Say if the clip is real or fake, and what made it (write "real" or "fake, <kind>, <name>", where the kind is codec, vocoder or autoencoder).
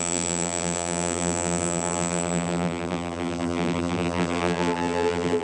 fake, vocoder, BigVGAN v2